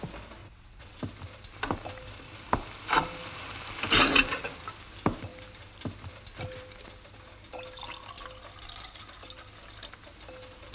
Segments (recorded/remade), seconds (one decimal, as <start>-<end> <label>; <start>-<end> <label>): 0.0-0.4 recorded; 0.4-1.0 remade; 1.0-10.7 recorded